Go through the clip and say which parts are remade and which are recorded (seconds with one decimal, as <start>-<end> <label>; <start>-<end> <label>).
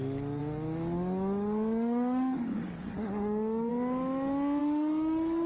0.0-0.4 recorded; 0.4-3.7 remade; 3.7-4.6 recorded; 4.6-5.5 remade